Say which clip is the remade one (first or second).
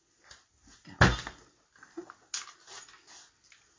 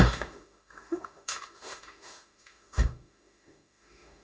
second